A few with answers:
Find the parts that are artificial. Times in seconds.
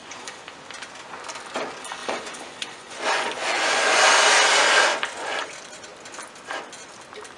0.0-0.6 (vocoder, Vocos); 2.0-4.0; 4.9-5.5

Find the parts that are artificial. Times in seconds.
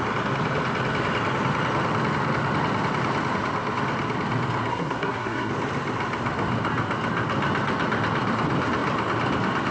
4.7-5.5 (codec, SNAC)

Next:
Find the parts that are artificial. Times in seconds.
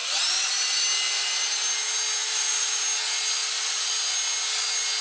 0.0-0.8 (vocoder, BigVGAN v2); 2.2-2.8; 3.4-3.9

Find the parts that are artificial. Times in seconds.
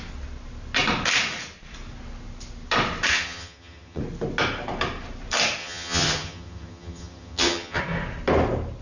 3.1-4.0 (vocoder, HiFi-GAN); 5.6-7.8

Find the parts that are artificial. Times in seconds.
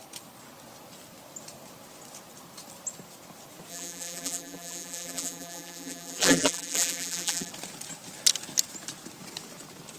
3.7-7.5 (vocoder, BigVGAN v2)